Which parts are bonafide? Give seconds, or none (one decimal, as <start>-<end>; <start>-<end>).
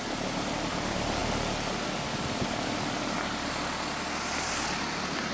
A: 1.2-4.4